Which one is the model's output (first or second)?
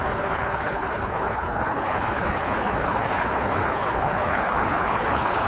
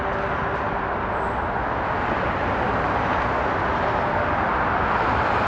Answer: first